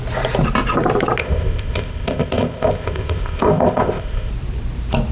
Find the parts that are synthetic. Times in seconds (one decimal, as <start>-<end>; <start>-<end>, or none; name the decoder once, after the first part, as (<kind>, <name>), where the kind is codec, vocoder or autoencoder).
1.2-4.3 (codec, ZipCodec)